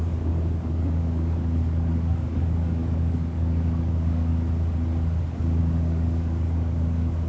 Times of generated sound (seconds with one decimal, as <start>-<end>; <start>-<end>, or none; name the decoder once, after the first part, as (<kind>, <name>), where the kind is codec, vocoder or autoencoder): 0.0-4.3 (codec, DAC); 5.6-7.3